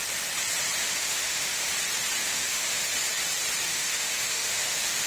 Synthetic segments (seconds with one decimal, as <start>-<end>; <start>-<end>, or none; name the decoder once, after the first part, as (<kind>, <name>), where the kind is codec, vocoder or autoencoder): 0.8-1.7 (autoencoder, DAC-VAE); 2.2-2.8; 3.7-5.1